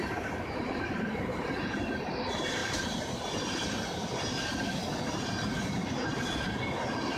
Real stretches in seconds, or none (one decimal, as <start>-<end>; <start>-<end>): 2.6-7.2